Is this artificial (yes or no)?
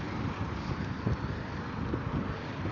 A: no